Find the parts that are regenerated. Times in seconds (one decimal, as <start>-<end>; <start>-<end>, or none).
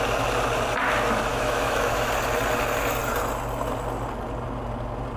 1.3-2.1